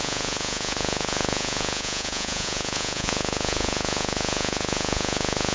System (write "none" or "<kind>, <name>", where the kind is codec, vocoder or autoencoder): vocoder, Vocos